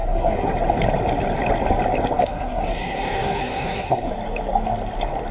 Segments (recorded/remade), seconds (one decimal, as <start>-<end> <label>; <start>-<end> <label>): 0.0-0.5 remade; 0.5-2.2 recorded; 2.2-4.1 remade; 4.1-5.3 recorded